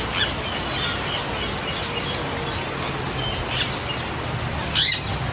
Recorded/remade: recorded